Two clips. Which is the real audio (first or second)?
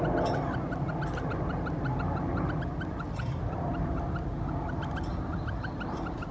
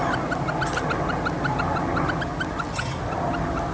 second